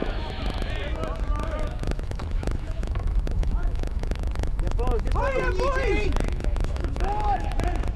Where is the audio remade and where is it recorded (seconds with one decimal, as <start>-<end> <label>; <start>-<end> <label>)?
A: 0.0-0.7 remade; 0.7-1.4 recorded; 1.4-5.1 remade; 5.1-5.9 recorded; 5.9-7.5 remade; 7.5-8.0 recorded

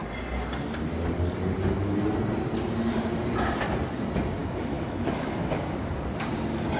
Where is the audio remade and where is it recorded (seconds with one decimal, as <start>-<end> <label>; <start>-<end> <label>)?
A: 0.0-4.4 recorded; 4.4-5.9 remade; 5.9-6.8 recorded

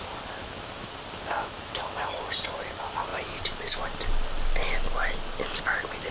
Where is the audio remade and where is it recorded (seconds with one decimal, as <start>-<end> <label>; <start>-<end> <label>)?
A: 0.0-0.4 recorded; 0.4-0.9 remade; 0.9-1.4 recorded; 1.4-2.0 remade; 2.0-6.1 recorded

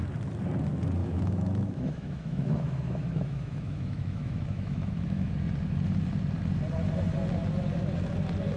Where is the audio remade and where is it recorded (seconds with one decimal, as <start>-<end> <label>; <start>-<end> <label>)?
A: 0.0-1.0 recorded; 1.0-5.3 remade; 5.3-8.6 recorded

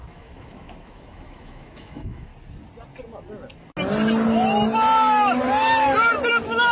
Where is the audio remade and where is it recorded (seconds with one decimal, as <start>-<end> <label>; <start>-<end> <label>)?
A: 0.0-2.3 remade; 2.3-6.3 recorded; 6.3-6.7 remade

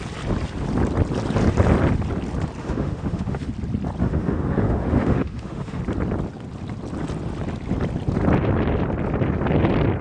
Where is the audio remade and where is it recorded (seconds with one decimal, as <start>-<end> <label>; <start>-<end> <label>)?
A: 0.0-2.6 recorded; 2.6-3.5 remade; 3.5-4.0 recorded; 4.0-5.8 remade; 5.8-10.0 recorded